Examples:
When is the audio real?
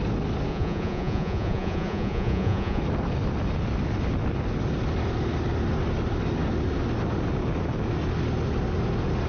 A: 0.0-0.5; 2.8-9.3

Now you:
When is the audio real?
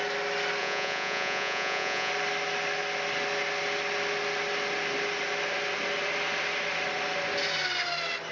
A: 0.0-0.6; 2.1-8.3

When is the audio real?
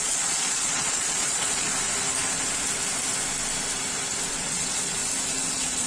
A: 1.7-4.3; 5.0-5.5